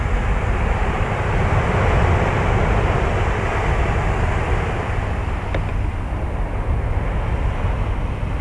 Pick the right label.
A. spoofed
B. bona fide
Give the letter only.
B